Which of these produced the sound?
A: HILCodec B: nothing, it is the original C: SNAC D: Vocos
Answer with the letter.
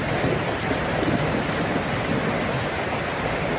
B